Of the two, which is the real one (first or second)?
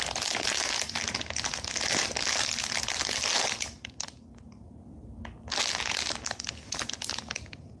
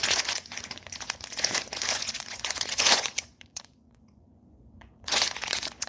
first